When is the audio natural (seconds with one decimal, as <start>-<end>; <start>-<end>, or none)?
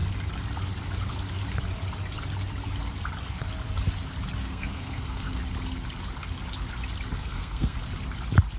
0.0-4.4; 5.4-7.2; 7.8-8.6